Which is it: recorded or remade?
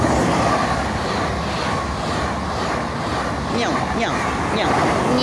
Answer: recorded